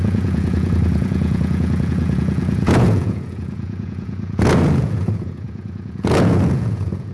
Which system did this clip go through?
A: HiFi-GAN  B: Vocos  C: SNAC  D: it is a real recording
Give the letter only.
B